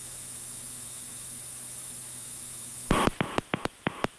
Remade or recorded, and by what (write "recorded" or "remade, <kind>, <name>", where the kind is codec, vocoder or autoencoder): remade, autoencoder, DAC-VAE